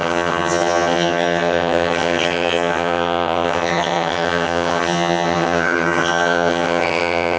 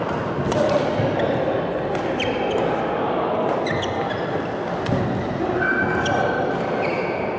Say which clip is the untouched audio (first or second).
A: second